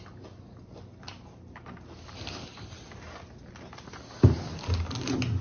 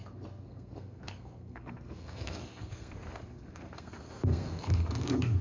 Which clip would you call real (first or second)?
first